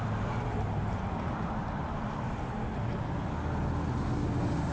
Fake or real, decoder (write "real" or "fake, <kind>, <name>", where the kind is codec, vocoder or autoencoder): real